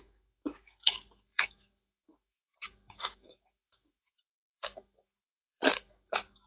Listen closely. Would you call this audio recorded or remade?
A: remade